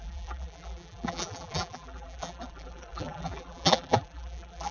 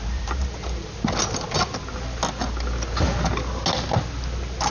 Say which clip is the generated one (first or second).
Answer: first